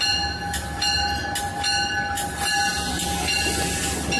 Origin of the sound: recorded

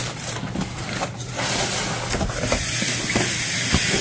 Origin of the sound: recorded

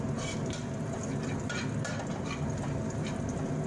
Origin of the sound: recorded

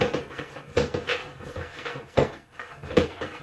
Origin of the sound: remade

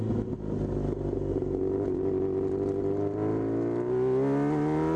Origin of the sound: recorded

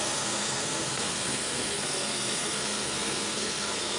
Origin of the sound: remade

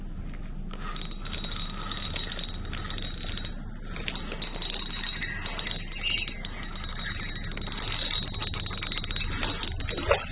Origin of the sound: recorded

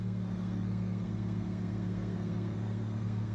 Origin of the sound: remade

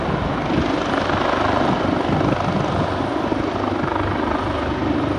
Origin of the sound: recorded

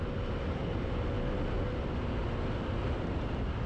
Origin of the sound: recorded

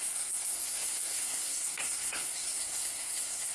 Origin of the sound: remade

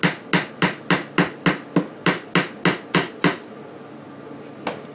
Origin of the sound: recorded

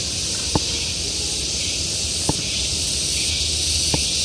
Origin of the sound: recorded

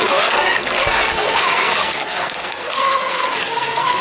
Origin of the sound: remade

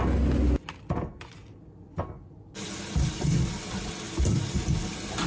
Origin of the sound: recorded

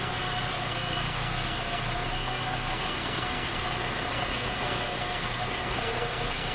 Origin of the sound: remade